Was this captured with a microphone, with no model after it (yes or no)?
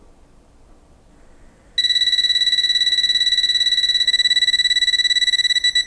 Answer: yes